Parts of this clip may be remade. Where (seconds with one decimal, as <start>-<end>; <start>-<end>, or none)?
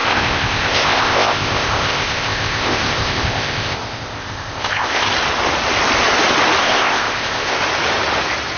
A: 0.0-5.1; 6.6-7.6